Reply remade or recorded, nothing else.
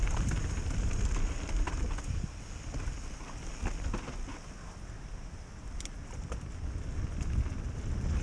recorded